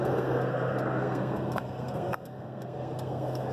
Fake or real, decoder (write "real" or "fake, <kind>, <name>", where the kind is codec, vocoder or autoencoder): fake, codec, SNAC